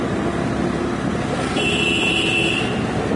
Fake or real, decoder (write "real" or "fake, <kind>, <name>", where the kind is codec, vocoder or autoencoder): fake, vocoder, BigVGAN v2